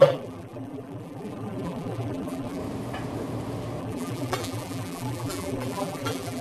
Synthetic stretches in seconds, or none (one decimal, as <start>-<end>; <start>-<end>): 0.0-2.6; 3.8-6.4